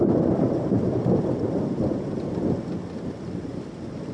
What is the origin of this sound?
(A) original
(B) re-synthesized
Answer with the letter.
A